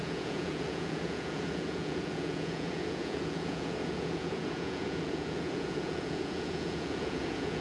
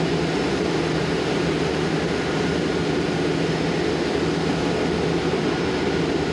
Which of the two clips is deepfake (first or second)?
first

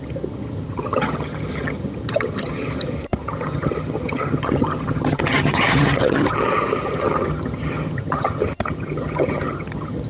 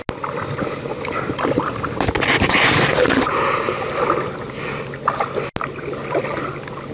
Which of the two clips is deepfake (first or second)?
first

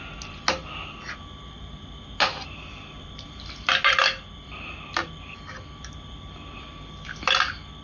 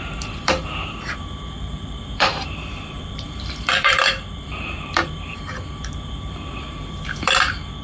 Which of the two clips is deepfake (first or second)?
second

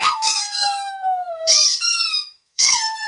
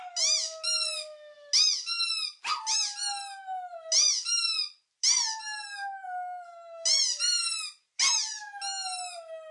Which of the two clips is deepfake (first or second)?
first